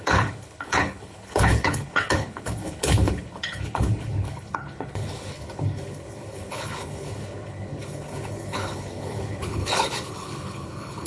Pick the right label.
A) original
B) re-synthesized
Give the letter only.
B